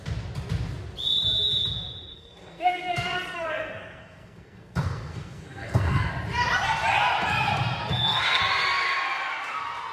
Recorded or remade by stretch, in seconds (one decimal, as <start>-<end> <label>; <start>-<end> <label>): 0.0-2.1 recorded; 2.1-6.1 remade; 6.1-7.8 recorded; 7.8-8.4 remade; 8.4-9.9 recorded